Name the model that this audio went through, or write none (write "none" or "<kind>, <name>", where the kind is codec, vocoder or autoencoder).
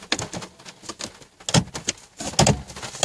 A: none